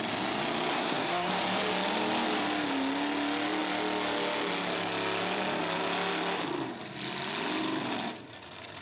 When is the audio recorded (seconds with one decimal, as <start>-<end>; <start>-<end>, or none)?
0.0-0.7; 1.3-8.8